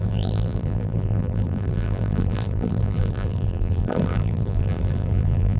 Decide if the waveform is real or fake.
fake